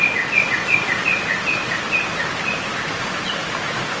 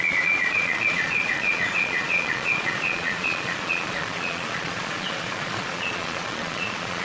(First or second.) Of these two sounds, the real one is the first